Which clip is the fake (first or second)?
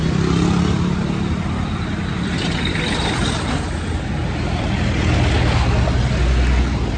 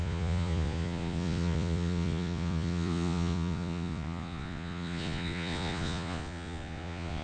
second